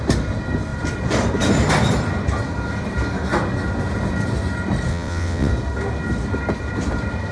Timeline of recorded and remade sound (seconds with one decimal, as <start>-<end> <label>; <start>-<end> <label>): 0.0-4.9 recorded; 4.9-5.5 remade; 5.5-7.3 recorded